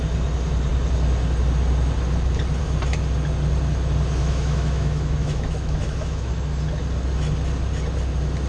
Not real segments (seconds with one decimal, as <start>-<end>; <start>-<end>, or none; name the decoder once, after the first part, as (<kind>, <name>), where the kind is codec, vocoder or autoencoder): 4.2-6.3 (autoencoder, DAC-VAE)